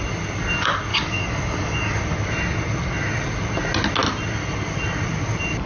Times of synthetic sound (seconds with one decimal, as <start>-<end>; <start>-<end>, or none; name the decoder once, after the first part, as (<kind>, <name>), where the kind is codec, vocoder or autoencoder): 0.9-2.0 (codec, DAC)